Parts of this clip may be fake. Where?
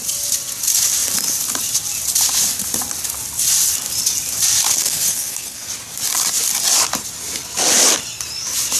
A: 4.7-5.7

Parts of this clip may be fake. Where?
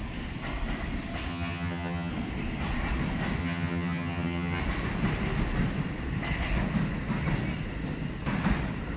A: 1.3-2.1; 3.4-4.6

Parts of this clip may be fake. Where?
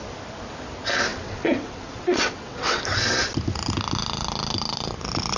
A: 1.1-2.8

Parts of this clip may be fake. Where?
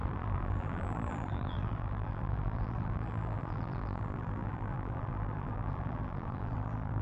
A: 0.0-7.0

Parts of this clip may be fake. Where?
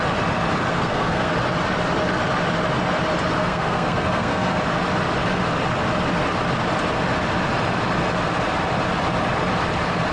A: 0.7-1.3; 3.4-4.6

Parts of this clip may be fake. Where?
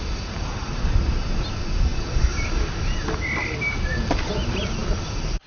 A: none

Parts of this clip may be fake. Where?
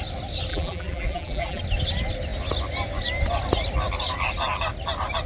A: 0.5-1.6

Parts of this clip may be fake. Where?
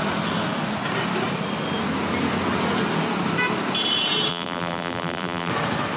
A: 4.3-5.5